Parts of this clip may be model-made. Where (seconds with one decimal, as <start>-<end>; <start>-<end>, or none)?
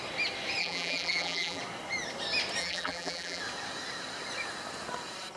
0.6-1.6; 2.6-3.4